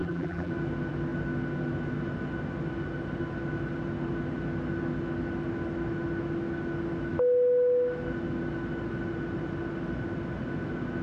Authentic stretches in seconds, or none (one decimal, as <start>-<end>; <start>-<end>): 0.5-11.0